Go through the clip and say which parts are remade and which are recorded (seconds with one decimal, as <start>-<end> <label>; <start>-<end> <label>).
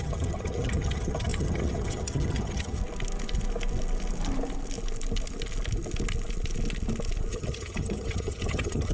0.0-2.8 remade; 2.8-7.3 recorded; 7.3-8.9 remade